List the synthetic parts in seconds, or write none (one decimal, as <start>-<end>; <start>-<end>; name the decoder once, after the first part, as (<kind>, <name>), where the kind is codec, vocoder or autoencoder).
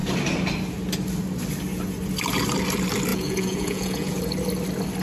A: 3.1-4.2 (vocoder, Vocos)